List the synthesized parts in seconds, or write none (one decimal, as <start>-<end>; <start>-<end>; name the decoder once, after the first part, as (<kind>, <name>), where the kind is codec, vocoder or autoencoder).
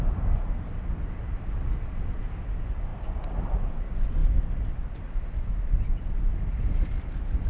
2.9-3.8 (vocoder, BigVGAN v2); 4.2-6.1